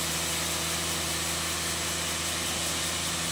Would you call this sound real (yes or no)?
yes